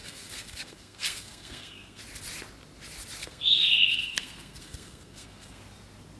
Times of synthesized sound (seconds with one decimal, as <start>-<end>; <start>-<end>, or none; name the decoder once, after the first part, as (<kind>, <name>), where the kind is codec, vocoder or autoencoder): 0.0-2.0 (codec, SNAC); 3.2-5.6